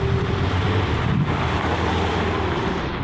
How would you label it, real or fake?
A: fake